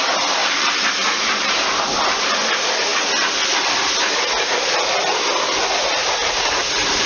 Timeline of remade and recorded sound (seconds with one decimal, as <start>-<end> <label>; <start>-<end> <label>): 0.0-0.4 recorded; 0.4-1.8 remade; 1.8-6.0 recorded; 6.0-6.6 remade; 6.6-7.1 recorded